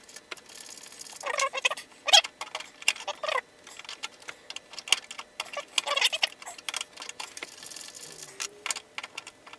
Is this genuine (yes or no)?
yes